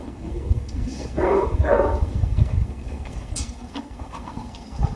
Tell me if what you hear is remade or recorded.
remade